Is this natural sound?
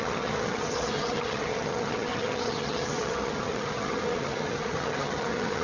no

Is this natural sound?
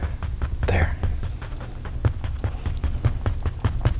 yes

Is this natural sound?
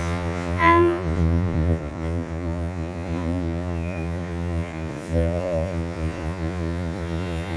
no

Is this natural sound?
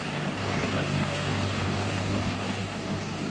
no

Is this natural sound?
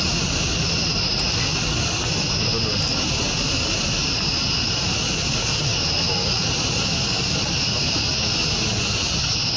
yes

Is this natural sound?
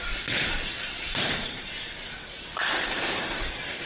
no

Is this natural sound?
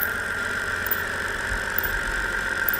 yes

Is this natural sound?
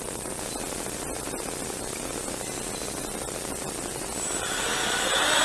yes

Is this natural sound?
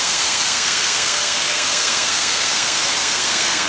no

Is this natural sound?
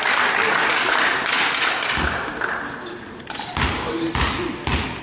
yes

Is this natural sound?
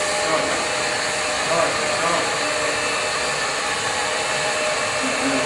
yes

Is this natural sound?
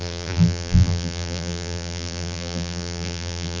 no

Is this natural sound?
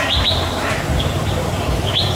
no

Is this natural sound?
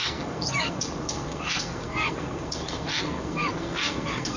no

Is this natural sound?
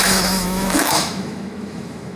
no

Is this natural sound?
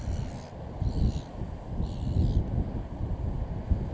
yes